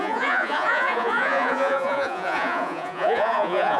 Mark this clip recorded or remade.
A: remade